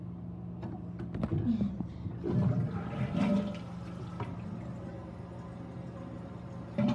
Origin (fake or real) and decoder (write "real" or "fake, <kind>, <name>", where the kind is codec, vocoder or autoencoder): real